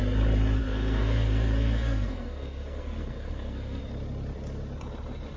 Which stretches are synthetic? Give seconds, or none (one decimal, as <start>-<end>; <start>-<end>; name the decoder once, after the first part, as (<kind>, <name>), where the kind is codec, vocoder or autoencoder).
0.6-3.8 (codec, SNAC)